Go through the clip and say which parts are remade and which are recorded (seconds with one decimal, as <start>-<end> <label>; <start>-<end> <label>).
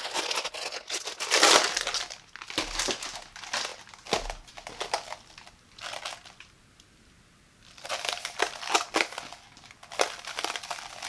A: 0.0-11.1 recorded